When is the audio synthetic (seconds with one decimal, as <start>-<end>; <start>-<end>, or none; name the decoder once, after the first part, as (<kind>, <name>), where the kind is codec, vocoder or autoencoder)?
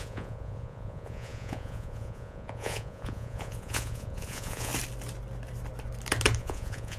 0.0-4.7 (vocoder, Vocos); 6.4-7.0